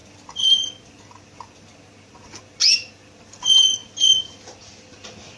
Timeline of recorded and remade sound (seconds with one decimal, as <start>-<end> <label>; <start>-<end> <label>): 0.0-5.4 recorded